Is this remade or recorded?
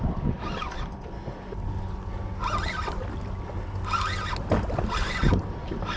recorded